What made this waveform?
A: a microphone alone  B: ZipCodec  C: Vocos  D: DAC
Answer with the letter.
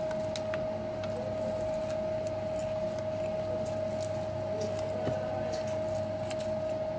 A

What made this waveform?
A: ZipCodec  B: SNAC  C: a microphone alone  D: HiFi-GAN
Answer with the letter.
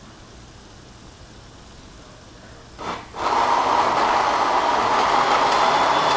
C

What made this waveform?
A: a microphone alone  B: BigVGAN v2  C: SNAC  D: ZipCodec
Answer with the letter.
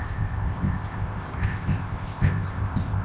D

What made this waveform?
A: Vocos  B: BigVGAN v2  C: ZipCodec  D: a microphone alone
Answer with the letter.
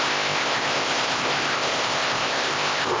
C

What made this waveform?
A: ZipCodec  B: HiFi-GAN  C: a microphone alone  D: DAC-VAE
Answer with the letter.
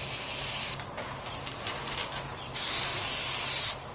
C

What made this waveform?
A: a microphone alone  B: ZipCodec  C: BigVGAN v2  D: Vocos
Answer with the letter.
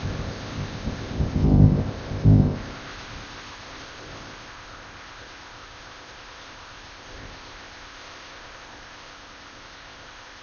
B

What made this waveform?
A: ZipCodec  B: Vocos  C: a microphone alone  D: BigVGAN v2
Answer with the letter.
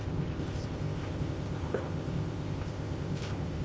A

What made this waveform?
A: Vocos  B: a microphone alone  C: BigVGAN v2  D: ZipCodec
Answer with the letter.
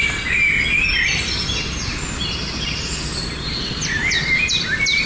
B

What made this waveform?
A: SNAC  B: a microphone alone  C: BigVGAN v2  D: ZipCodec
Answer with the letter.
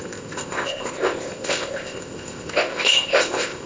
D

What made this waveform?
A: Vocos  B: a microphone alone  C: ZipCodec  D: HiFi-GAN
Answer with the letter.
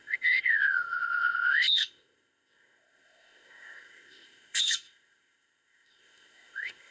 C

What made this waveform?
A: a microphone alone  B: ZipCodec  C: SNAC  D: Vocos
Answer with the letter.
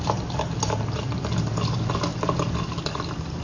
A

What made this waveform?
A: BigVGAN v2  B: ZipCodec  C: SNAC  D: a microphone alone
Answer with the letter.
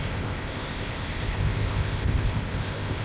B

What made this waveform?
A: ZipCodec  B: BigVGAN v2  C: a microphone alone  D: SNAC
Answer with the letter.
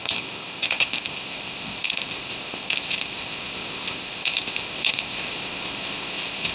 A